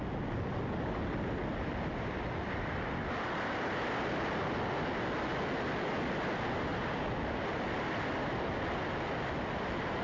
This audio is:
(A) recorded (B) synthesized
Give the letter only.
A